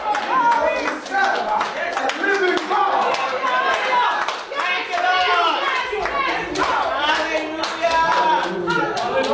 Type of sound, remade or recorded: recorded